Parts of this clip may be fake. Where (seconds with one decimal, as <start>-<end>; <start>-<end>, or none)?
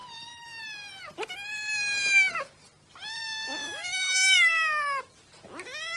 3.6-5.0